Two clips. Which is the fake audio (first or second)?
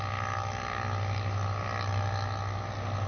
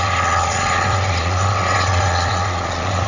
second